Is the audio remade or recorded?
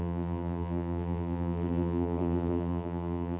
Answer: remade